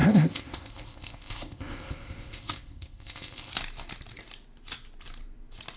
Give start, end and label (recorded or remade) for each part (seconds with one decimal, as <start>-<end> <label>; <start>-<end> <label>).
0.0-3.5 remade; 3.5-5.8 recorded